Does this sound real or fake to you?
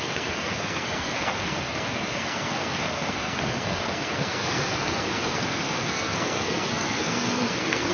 fake